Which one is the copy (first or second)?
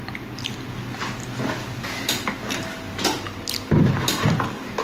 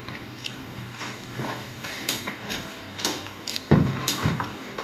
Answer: second